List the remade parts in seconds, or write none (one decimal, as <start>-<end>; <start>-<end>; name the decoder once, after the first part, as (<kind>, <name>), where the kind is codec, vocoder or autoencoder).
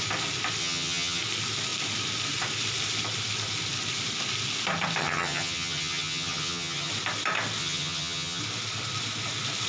0.6-1.2 (vocoder, HiFi-GAN); 5.0-6.9; 7.6-8.4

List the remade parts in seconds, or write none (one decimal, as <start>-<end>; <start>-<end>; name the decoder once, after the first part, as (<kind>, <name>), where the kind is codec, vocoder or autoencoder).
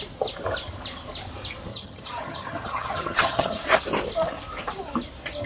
1.7-3.6 (vocoder, HiFi-GAN)